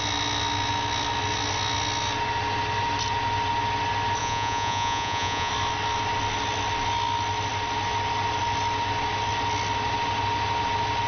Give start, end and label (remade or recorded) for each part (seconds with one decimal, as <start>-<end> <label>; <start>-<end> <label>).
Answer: 0.0-4.2 recorded; 4.2-5.5 remade; 5.5-11.1 recorded